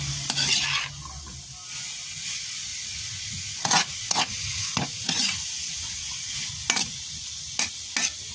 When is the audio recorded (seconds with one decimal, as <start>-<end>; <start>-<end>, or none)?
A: 0.0-2.7; 6.5-8.3